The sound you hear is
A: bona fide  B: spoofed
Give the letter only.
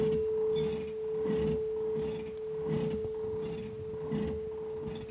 A